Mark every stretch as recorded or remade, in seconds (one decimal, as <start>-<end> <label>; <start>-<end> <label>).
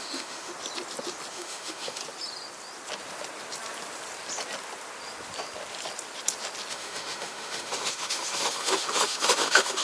0.0-0.5 remade; 0.5-1.3 recorded; 1.3-2.0 remade; 2.0-6.7 recorded; 6.7-9.8 remade